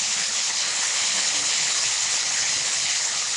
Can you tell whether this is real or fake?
fake